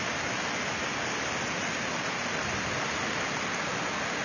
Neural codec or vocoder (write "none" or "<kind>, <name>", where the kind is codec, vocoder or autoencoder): none